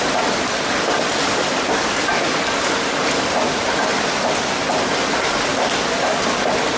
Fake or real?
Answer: real